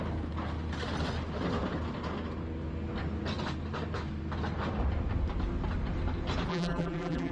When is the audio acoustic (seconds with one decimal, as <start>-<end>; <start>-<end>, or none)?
0.0-6.5